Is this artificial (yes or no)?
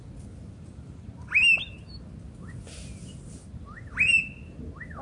no